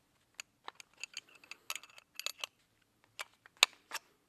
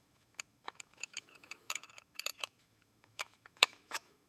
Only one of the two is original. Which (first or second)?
first